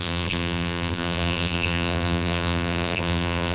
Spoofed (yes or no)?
yes